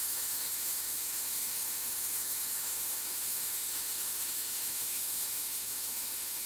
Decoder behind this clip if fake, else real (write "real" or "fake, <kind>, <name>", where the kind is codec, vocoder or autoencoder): fake, autoencoder, DAC-VAE